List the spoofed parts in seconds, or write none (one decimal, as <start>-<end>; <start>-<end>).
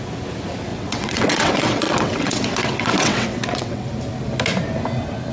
0.7-3.9